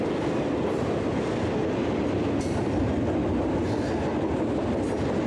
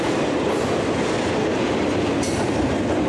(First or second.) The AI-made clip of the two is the second